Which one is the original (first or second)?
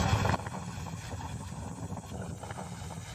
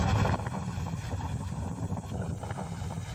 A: first